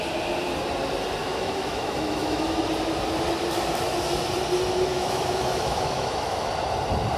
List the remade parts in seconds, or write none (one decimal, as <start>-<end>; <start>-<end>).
1.2-2.6; 4.9-6.5